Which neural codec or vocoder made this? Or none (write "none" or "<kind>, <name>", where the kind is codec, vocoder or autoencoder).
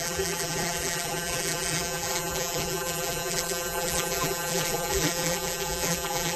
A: vocoder, BigVGAN v2